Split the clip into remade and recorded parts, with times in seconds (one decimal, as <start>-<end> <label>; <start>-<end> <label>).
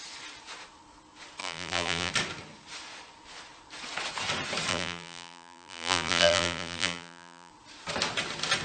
0.0-1.4 recorded; 1.4-2.1 remade; 2.1-4.7 recorded; 4.7-7.5 remade; 7.5-8.6 recorded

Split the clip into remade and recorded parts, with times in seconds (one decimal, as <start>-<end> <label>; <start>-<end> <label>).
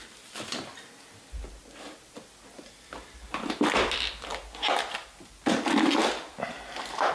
0.0-6.0 recorded; 6.0-7.1 remade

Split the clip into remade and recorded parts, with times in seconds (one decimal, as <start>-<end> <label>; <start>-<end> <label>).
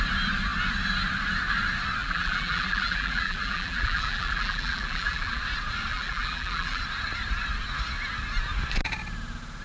0.0-2.0 recorded; 2.0-5.4 remade; 5.4-5.9 recorded; 5.9-6.8 remade; 6.8-9.6 recorded